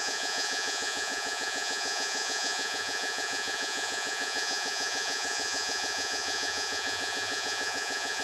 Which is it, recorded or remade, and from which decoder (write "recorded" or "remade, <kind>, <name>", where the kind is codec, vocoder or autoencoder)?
remade, vocoder, Vocos